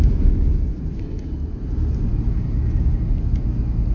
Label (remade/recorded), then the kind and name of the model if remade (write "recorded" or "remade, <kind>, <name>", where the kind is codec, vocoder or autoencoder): recorded